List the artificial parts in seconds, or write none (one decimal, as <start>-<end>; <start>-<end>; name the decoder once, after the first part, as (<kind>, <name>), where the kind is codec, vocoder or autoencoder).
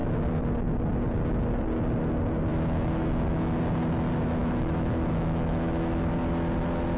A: 2.5-3.6 (autoencoder, DAC-VAE); 4.4-6.0